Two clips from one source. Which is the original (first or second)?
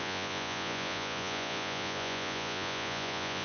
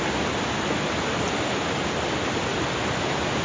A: second